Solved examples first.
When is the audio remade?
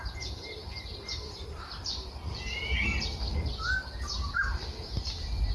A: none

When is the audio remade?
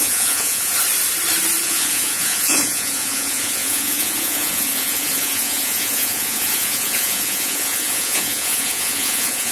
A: 0.0-0.7 (vocoder, Vocos); 1.6-9.5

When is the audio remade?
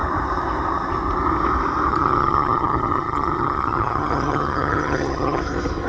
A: 1.9-5.4 (vocoder, HiFi-GAN)